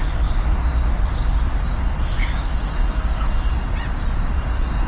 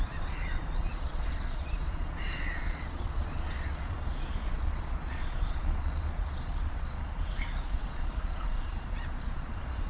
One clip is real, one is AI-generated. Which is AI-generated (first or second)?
second